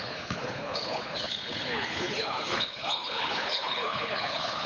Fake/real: fake